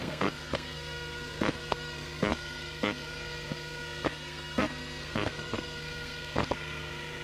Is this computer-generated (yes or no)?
yes